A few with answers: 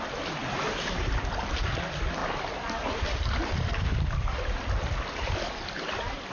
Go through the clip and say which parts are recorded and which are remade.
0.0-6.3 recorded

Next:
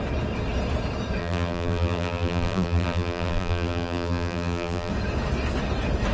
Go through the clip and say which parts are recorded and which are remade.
0.0-1.2 recorded; 1.2-4.9 remade; 4.9-6.1 recorded

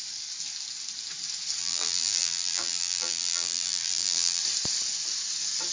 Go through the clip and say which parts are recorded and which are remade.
0.0-1.6 recorded; 1.6-4.4 remade; 4.4-5.7 recorded

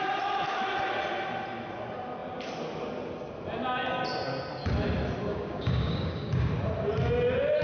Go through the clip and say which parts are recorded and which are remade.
0.0-5.3 recorded; 5.3-6.5 remade; 6.5-7.6 recorded

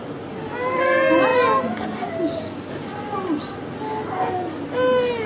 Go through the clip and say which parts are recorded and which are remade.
0.0-5.3 recorded